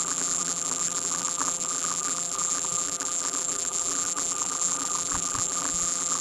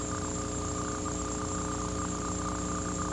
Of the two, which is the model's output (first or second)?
first